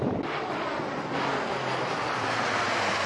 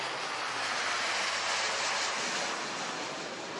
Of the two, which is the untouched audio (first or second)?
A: second